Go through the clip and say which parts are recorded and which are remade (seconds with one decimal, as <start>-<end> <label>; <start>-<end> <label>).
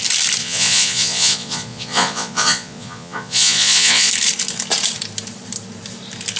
0.0-0.4 recorded; 0.4-4.1 remade; 4.1-6.4 recorded